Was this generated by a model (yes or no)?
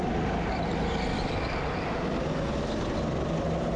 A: no